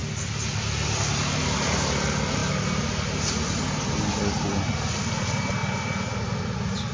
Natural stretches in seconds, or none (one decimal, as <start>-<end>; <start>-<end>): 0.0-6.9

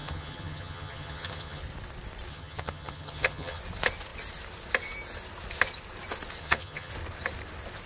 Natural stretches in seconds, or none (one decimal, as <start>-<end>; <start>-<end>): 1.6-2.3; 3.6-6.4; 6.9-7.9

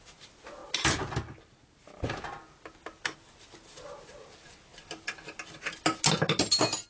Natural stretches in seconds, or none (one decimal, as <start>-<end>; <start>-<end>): 0.0-6.9

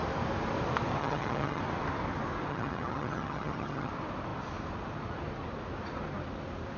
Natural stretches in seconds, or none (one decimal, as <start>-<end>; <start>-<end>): 0.0-1.0; 1.6-2.5; 3.9-6.8

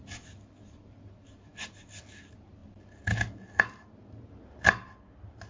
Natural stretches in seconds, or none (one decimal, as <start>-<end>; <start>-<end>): 0.0-5.5

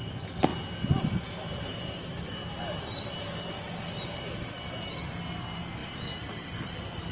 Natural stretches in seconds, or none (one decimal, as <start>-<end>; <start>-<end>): 0.0-7.1

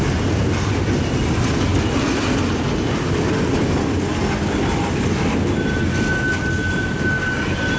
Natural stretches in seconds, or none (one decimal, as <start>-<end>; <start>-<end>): 0.0-7.8

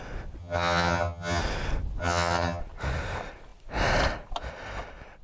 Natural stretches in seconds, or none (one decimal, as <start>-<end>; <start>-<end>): 0.0-0.4; 1.4-2.0; 2.6-5.2